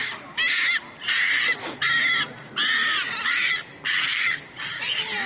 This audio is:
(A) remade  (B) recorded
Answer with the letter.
B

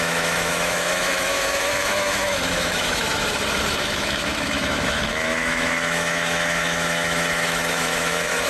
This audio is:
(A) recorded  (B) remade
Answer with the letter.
B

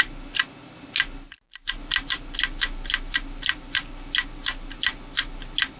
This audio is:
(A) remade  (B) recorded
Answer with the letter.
B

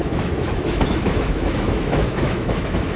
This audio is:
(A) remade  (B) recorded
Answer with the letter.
A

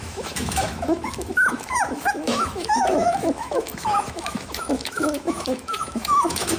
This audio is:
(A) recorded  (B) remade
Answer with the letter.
B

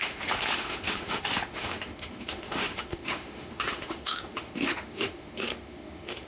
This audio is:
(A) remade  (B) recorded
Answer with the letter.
A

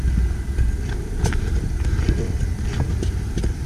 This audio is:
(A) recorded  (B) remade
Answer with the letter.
A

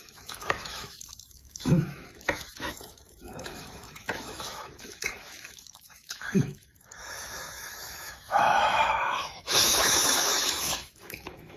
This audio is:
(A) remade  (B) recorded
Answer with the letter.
A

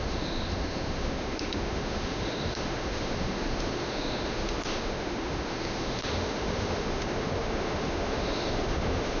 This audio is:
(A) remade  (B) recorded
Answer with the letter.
A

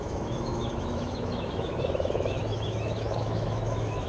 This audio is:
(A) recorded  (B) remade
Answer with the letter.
B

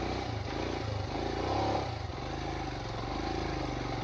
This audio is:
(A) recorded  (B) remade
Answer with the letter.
A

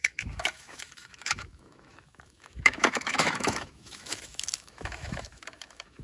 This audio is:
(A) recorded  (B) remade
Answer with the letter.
B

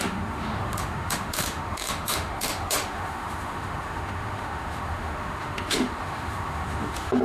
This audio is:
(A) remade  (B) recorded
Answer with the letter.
A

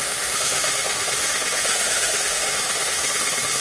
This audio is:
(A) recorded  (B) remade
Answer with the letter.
B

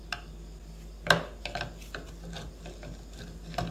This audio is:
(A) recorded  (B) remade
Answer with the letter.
A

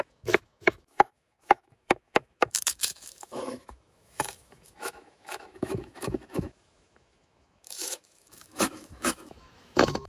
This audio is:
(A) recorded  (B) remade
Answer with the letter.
B